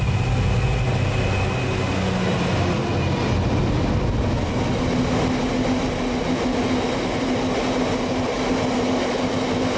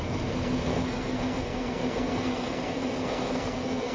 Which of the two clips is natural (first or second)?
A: first